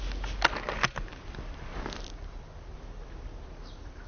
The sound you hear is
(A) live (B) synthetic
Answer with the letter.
A